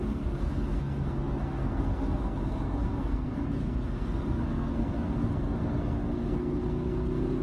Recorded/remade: remade